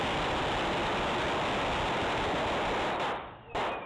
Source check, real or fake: real